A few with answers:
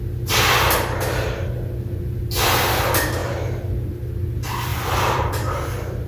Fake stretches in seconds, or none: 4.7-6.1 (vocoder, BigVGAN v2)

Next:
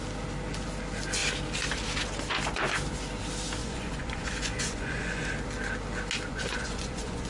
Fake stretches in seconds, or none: 3.6-5.2 (vocoder, Vocos); 6.3-7.3